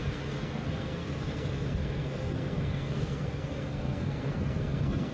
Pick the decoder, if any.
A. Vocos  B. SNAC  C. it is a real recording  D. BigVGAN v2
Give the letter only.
B